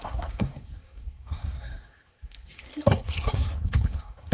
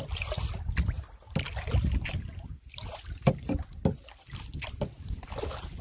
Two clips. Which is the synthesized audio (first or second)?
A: first